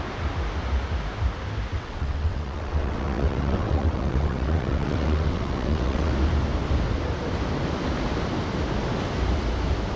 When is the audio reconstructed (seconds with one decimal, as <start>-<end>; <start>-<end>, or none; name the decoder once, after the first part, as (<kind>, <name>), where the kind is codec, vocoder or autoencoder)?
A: 1.7-6.1 (vocoder, WaveNeXt)